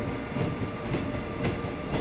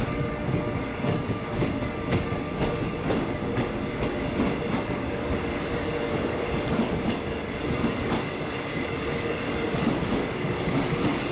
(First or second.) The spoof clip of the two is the second